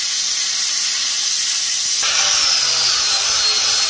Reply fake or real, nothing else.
real